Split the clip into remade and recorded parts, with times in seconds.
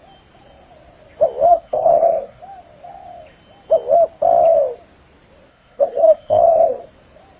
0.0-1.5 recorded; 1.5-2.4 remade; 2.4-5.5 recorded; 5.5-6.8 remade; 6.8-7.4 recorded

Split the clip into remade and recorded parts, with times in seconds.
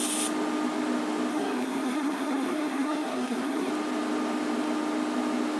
0.0-1.3 recorded; 1.3-3.7 remade; 3.7-5.6 recorded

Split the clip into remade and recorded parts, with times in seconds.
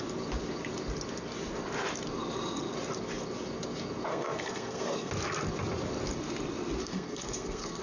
0.0-4.1 recorded; 4.1-5.1 remade; 5.1-6.8 recorded; 6.8-7.8 remade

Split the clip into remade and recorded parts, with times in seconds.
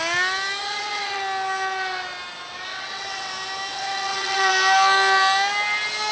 0.0-0.6 recorded; 0.6-1.2 remade; 1.2-2.7 recorded; 2.7-3.3 remade; 3.3-3.7 recorded; 3.7-4.5 remade; 4.5-6.1 recorded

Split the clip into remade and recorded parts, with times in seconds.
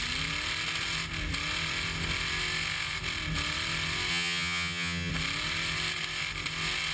0.0-4.1 recorded; 4.1-5.1 remade; 5.1-6.9 recorded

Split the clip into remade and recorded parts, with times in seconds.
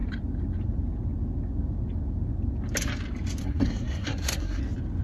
0.0-3.4 recorded; 3.4-4.6 remade; 4.6-5.0 recorded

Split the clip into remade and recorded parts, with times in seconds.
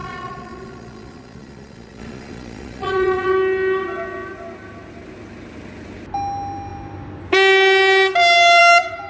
0.0-3.3 remade; 3.3-9.1 recorded